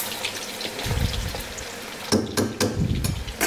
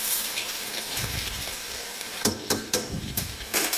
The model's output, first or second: second